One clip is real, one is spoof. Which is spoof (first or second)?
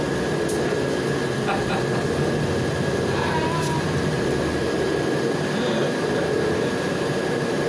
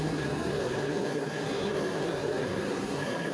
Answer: second